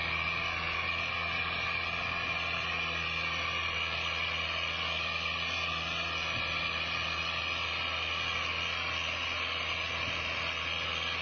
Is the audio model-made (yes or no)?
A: no